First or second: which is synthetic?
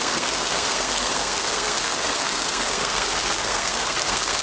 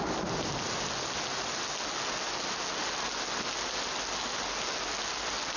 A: first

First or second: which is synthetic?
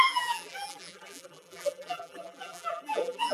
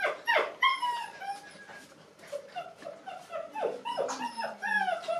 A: first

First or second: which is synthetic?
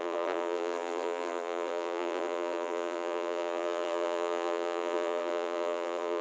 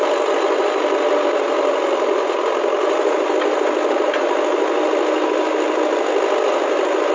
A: first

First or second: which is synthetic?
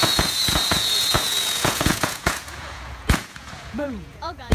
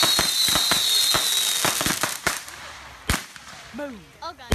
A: first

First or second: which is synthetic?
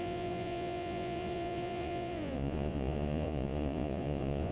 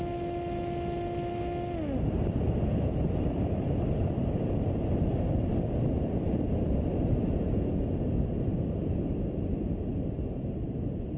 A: first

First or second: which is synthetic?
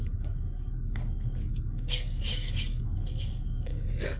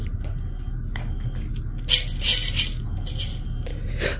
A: first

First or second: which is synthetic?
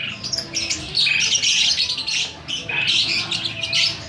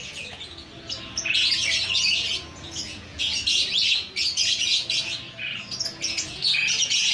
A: second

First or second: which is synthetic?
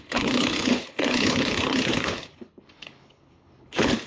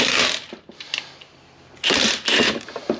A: first